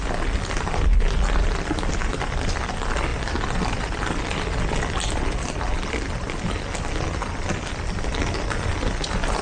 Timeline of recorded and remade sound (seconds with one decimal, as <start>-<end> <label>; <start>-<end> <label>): 0.0-9.4 recorded